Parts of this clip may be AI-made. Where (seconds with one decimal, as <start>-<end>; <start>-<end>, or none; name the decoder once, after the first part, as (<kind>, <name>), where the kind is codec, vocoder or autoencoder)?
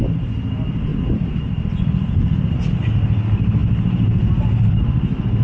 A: none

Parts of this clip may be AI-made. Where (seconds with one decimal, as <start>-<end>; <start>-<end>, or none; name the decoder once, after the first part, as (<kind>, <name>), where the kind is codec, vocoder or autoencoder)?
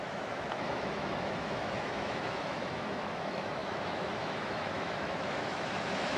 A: 0.0-6.2 (autoencoder, DAC-VAE)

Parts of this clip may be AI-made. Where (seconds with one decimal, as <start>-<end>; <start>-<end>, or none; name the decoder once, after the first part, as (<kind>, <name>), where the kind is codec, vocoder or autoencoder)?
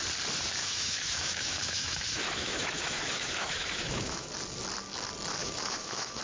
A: 0.6-4.3 (autoencoder, DAC-VAE); 5.4-6.2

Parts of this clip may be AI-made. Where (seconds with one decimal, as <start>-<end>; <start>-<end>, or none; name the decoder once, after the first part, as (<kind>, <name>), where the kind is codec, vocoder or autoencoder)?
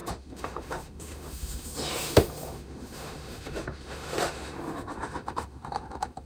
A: 0.0-6.3 (autoencoder, DAC-VAE)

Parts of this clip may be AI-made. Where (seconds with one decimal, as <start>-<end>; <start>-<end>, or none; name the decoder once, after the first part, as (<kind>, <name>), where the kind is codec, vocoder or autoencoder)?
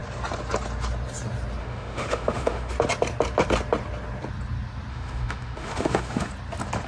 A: 1.6-2.7 (autoencoder, DAC-VAE); 4.9-6.3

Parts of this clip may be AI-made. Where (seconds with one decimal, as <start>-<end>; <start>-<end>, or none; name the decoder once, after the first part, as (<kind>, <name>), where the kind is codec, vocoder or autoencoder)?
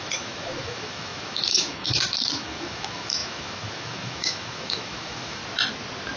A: 0.0-5.4 (autoencoder, DAC-VAE)